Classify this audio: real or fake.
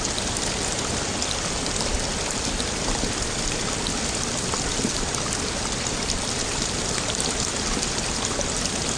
real